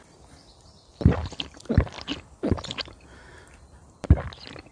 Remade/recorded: remade